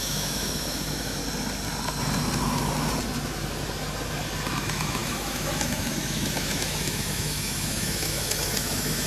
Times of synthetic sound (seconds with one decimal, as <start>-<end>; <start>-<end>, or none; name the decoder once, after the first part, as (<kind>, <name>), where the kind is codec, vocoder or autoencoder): 0.0-1.2 (autoencoder, DAC-VAE); 4.6-9.1